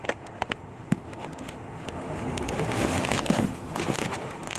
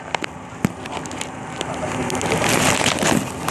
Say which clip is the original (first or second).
second